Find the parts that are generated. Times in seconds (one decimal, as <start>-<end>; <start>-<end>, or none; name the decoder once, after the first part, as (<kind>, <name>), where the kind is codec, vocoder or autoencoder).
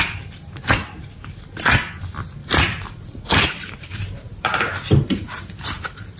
2.4-6.2 (vocoder, BigVGAN v2)